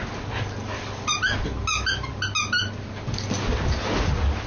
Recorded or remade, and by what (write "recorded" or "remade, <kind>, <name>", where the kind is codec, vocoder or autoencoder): recorded